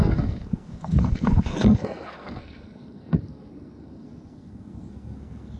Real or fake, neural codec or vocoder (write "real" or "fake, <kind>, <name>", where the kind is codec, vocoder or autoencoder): fake, codec, SNAC